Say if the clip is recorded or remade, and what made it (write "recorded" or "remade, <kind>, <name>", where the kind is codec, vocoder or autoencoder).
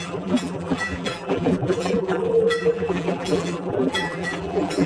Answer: remade, vocoder, BigVGAN v2